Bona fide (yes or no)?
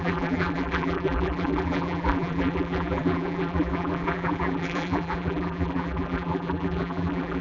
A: no